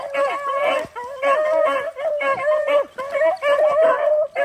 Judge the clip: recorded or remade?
recorded